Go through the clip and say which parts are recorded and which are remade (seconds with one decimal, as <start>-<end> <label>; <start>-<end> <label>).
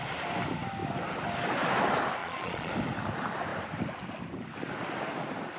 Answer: 0.0-2.2 recorded; 2.2-2.7 remade; 2.7-5.6 recorded